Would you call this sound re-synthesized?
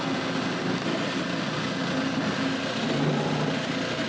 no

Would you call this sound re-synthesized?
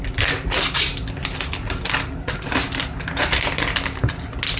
no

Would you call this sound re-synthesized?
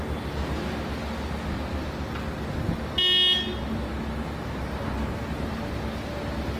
no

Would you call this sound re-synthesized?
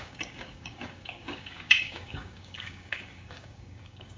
yes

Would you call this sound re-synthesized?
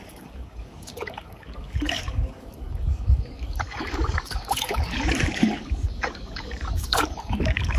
yes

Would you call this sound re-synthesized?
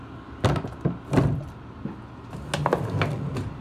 no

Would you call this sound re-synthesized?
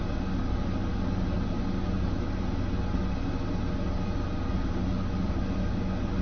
no